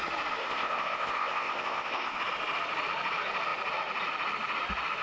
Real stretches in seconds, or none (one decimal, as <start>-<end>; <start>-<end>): 0.0-0.4; 2.2-5.0